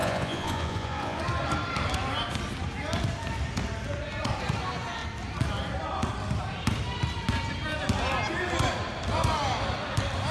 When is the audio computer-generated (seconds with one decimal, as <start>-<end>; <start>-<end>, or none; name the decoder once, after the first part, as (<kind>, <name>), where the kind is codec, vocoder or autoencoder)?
0.0-1.2 (vocoder, Vocos)